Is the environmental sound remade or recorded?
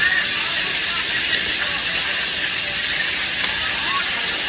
recorded